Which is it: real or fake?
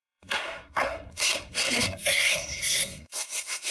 fake